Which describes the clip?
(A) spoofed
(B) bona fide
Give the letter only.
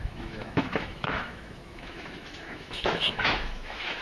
A